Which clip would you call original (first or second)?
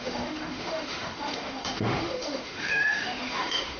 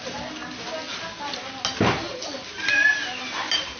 second